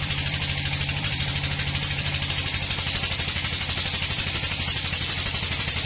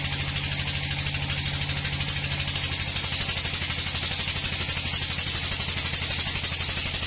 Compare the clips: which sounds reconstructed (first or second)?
first